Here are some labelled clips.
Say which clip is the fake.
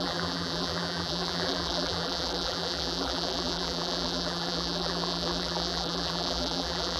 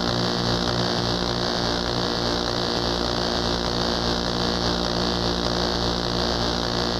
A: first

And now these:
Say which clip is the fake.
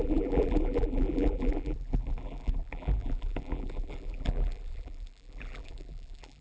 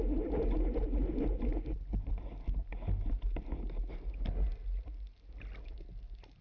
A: first